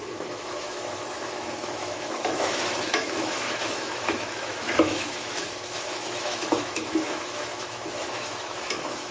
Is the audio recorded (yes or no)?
no